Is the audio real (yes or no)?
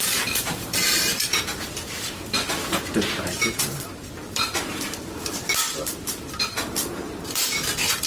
no